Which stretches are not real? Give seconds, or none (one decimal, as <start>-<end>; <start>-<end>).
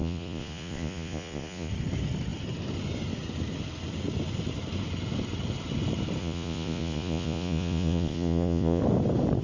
0.0-1.7; 6.2-8.8